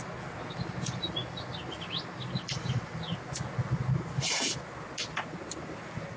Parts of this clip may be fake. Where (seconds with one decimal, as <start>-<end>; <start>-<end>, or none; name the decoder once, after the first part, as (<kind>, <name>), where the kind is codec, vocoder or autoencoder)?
none